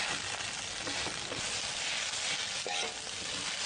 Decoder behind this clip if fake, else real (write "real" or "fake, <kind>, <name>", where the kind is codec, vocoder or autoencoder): real